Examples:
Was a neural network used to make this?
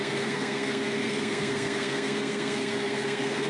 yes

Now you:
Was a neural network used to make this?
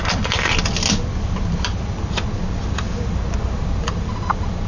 no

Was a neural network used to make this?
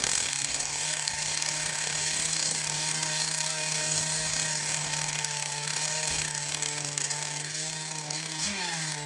yes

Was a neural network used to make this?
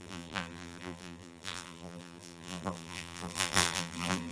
yes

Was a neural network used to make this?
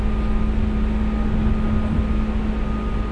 no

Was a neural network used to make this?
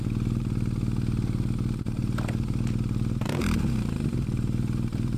yes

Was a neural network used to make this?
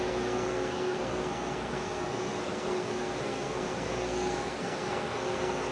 yes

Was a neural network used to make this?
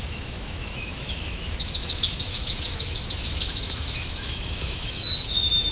yes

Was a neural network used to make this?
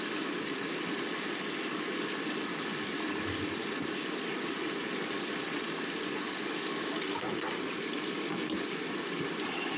no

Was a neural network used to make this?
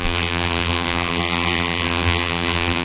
yes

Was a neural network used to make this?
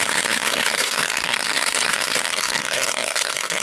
yes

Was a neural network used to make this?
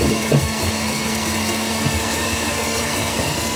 yes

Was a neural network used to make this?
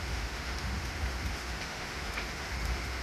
yes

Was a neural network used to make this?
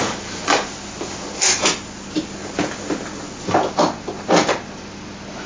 no